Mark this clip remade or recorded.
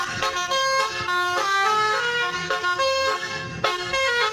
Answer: remade